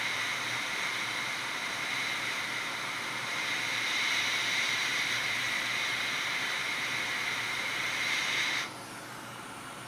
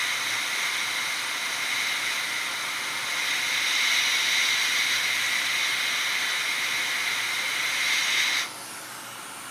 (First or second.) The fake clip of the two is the first